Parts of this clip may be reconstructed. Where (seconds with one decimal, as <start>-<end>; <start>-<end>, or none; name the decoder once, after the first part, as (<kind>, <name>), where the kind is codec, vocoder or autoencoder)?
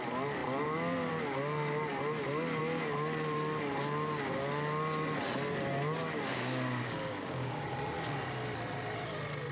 6.0-7.6 (codec, DAC)